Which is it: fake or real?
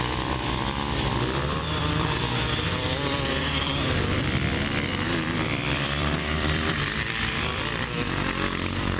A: fake